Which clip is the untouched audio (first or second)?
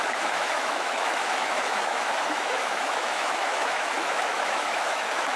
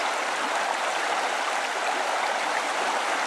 second